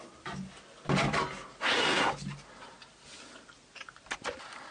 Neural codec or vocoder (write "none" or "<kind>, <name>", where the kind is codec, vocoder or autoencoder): none